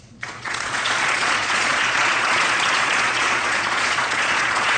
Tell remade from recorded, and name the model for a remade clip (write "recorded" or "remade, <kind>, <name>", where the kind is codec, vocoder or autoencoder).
remade, vocoder, Vocos